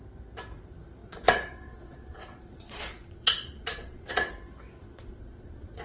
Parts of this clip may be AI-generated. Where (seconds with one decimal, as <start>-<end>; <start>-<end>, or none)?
1.0-4.3; 4.8-5.8